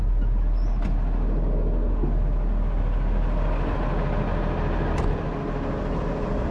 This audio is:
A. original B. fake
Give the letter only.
A